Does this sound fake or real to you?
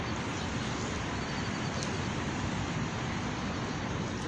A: real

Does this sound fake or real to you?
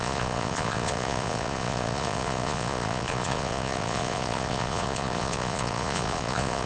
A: fake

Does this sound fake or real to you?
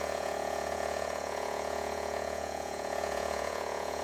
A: fake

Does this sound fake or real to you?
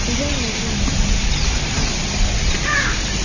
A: real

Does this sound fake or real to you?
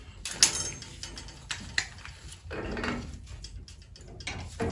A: real